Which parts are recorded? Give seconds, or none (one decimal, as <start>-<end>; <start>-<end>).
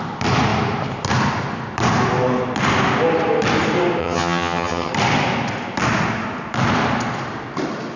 0.0-4.0; 4.9-8.0